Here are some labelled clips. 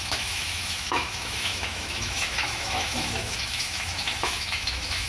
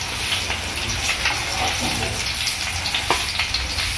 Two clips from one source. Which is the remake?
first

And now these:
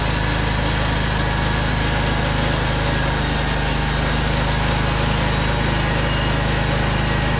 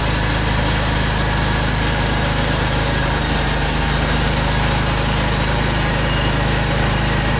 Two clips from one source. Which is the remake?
second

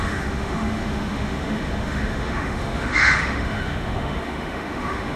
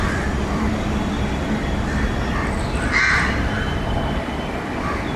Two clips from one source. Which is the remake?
first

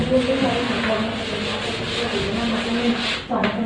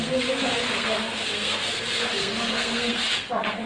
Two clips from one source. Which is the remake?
second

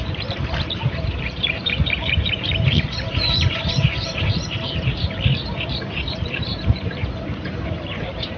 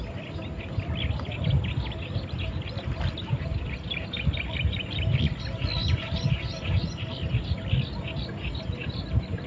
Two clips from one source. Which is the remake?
first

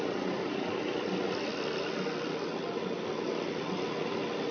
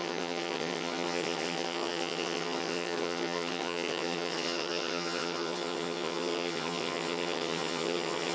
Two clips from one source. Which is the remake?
second